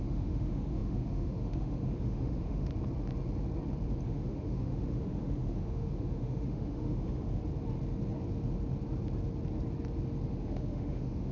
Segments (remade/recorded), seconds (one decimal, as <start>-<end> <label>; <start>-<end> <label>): 0.0-2.7 remade; 2.7-4.0 recorded; 4.0-7.4 remade; 7.4-10.3 recorded; 10.3-11.3 remade